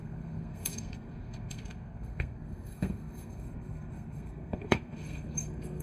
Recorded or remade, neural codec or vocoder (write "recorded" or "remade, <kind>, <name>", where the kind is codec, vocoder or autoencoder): remade, codec, SNAC